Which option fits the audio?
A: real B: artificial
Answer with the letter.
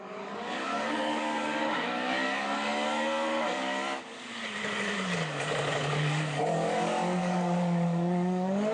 B